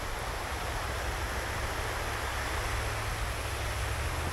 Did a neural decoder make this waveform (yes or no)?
no